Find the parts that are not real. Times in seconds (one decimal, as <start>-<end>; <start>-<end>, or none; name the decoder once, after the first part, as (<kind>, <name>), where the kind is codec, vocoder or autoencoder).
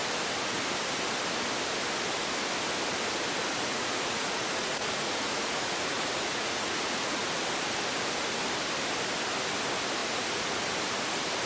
3.5-7.2 (vocoder, Vocos); 10.0-10.6